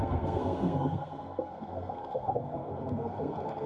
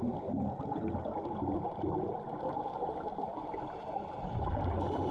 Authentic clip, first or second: second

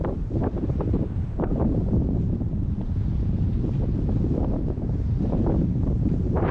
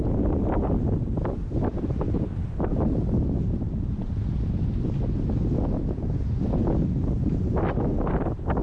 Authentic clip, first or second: second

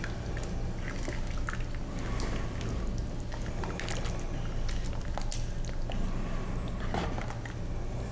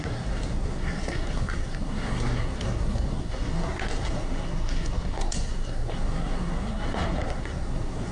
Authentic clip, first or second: first